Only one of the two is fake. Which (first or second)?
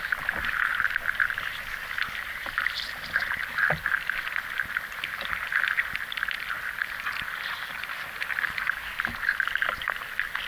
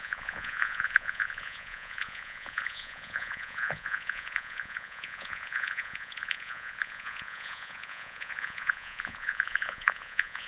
second